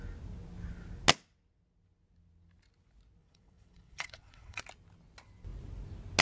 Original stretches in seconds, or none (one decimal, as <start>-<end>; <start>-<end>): 0.0-3.2; 4.6-6.2